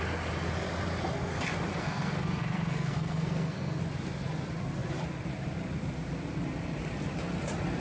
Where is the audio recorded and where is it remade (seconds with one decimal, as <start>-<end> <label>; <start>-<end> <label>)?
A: 0.0-1.7 recorded; 1.7-3.8 remade; 3.8-7.8 recorded